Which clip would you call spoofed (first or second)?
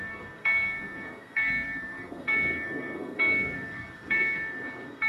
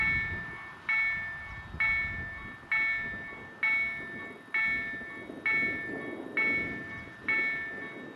first